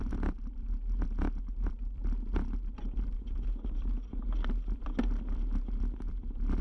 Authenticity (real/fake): fake